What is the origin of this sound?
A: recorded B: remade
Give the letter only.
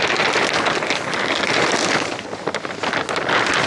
A